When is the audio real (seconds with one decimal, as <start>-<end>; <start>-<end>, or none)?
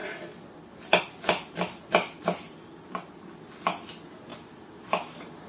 0.0-4.3; 4.9-5.5